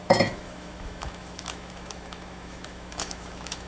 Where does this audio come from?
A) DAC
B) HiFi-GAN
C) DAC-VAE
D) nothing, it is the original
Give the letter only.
C